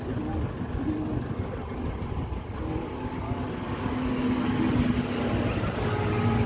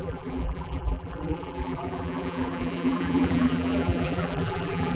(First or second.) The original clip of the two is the first